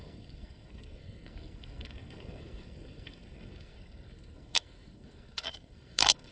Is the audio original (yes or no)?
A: no